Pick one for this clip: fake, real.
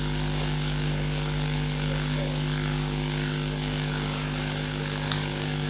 fake